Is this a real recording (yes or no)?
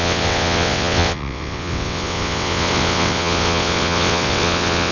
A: no